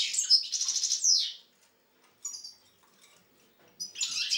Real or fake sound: real